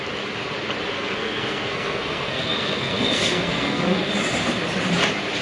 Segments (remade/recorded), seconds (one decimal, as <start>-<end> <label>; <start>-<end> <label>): 0.0-0.9 recorded; 0.9-4.1 remade; 4.1-5.4 recorded